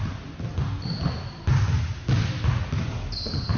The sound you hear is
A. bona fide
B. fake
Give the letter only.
A